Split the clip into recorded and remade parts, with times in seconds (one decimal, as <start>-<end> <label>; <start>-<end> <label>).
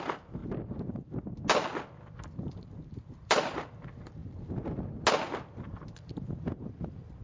0.0-0.4 remade; 0.4-2.5 recorded; 2.5-4.2 remade; 4.2-6.0 recorded; 6.0-7.2 remade